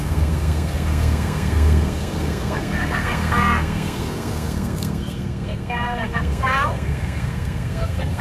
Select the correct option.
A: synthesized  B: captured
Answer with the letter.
A